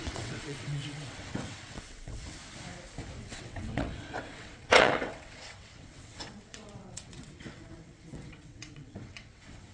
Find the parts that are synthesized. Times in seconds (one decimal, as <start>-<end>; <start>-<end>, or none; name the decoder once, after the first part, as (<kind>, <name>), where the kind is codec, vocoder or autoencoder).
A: 0.0-2.4 (vocoder, WaveNeXt); 3.2-9.7